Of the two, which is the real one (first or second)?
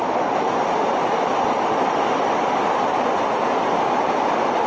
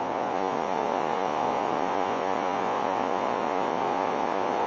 first